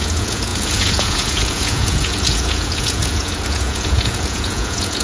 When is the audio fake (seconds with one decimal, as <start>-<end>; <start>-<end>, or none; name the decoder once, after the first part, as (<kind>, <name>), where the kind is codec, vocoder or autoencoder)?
0.0-5.0 (vocoder, Vocos)